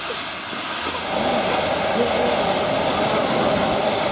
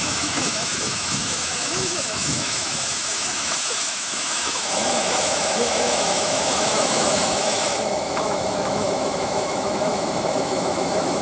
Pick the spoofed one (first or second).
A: second